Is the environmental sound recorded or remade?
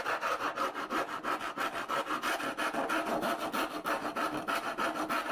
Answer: recorded